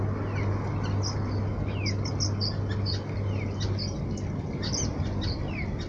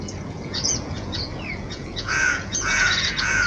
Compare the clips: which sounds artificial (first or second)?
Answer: second